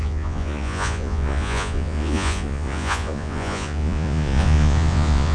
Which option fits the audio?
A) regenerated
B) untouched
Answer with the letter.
A